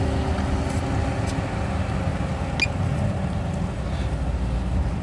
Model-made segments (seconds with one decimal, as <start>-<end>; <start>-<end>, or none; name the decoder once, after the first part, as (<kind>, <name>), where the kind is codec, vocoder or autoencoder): none